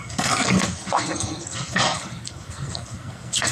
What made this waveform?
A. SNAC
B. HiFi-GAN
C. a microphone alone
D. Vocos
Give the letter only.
A